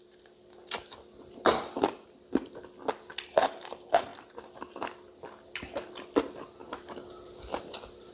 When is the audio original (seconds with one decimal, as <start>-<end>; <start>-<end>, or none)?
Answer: 6.6-8.1